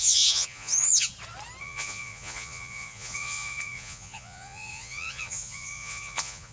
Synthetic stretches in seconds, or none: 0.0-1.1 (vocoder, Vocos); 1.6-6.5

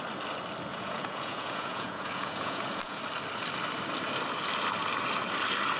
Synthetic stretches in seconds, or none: 0.7-3.0 (vocoder, Vocos)

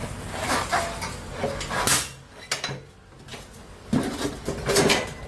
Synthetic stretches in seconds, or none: none

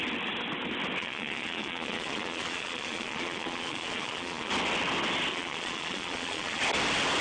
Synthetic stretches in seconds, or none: 1.0-4.5 (vocoder, Vocos); 5.3-6.6

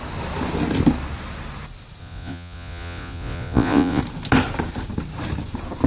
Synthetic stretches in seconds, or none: 2.0-4.0 (vocoder, Vocos)

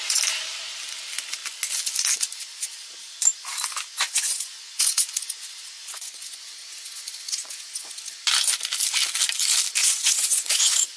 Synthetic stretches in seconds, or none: 3.9-8.2 (vocoder, Vocos); 9.8-11.0

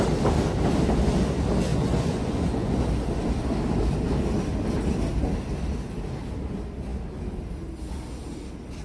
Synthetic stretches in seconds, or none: 1.7-2.8 (vocoder, Vocos)